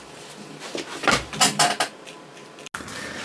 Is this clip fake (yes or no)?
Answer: no